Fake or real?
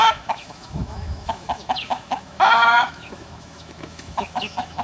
fake